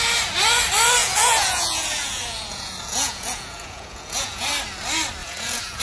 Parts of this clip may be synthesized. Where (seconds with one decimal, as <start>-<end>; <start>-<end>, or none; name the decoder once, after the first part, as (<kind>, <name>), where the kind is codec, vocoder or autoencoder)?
1.0-4.5 (vocoder, Vocos); 5.2-5.8